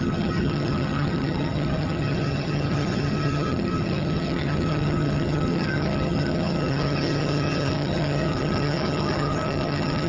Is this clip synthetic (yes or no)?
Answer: yes